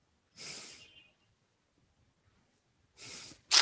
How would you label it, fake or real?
real